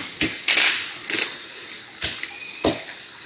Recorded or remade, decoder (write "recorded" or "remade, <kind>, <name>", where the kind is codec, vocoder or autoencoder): recorded